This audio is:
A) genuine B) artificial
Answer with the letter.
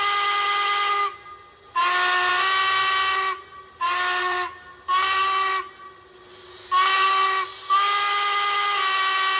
A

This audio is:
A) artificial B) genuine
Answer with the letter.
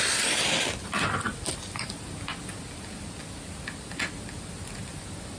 B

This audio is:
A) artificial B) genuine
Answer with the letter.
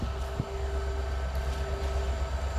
B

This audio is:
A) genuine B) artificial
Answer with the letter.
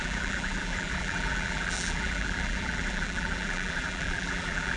B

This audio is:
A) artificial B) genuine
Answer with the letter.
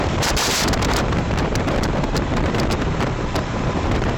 A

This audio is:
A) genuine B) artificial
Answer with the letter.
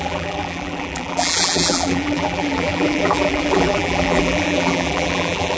B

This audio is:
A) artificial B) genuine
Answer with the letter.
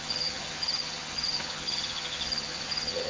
A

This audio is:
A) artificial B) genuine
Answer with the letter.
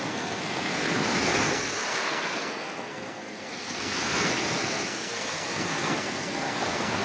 A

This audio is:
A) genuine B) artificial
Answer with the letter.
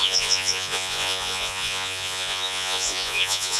B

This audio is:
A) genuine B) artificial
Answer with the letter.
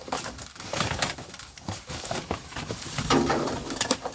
B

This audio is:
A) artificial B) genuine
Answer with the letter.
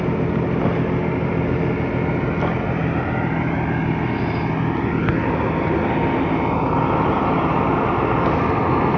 B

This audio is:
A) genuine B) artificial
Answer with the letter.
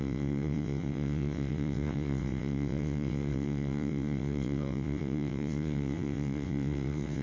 B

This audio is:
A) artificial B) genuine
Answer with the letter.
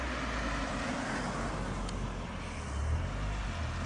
B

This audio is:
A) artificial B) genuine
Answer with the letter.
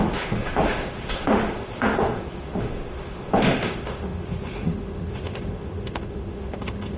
A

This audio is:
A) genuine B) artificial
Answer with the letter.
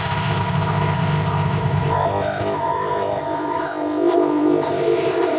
B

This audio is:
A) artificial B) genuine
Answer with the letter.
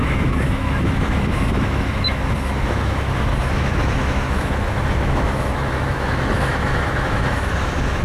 A